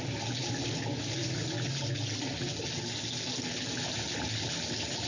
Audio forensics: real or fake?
real